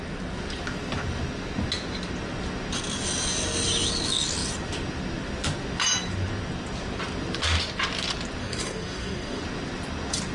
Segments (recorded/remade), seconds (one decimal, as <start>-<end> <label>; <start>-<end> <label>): 0.0-8.4 recorded; 8.4-9.4 remade; 9.4-10.3 recorded